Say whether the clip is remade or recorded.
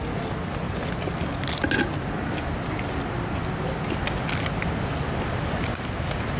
recorded